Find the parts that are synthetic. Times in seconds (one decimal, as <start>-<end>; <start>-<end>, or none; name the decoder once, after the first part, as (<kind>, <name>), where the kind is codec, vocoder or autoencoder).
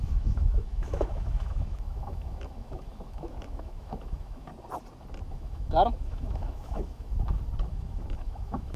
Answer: 0.0-4.5 (autoencoder, DAC-VAE); 5.3-7.1; 7.7-8.8